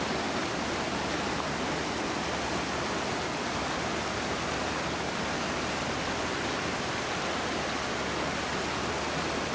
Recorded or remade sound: recorded